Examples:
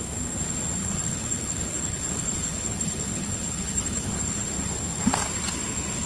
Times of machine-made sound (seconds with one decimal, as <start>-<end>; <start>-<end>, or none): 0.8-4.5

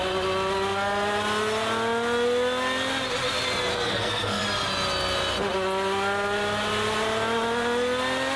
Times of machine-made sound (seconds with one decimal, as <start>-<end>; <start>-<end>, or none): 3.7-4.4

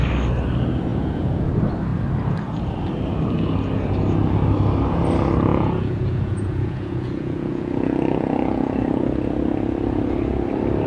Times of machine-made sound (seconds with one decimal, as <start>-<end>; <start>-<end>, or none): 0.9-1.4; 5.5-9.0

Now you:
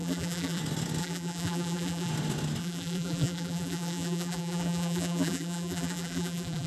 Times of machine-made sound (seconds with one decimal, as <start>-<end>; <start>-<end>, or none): 0.0-0.6; 1.0-2.1; 2.6-6.7

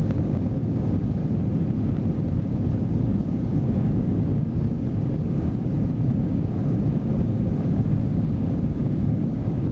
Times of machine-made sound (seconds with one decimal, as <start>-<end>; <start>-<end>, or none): 0.0-1.2; 2.4-9.7

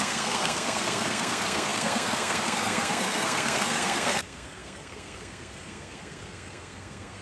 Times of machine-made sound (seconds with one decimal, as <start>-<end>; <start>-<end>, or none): 0.0-7.2

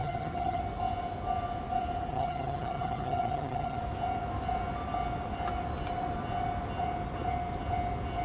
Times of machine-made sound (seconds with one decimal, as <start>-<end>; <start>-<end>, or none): 0.0-0.6; 2.1-3.8